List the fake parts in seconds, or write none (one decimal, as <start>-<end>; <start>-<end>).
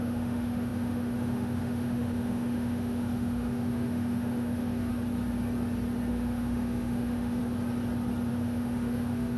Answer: 0.0-4.9; 6.1-7.4; 8.3-9.4